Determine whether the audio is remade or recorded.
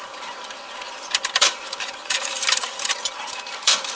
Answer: remade